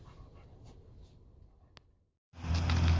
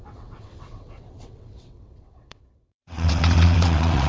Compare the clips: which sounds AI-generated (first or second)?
second